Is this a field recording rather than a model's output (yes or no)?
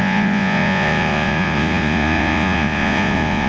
no